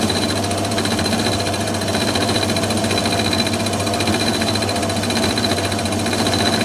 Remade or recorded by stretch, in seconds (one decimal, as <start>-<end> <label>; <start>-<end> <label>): 0.0-3.0 remade; 3.0-3.6 recorded; 3.6-6.6 remade